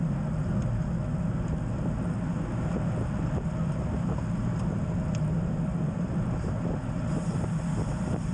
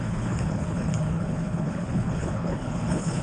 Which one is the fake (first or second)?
second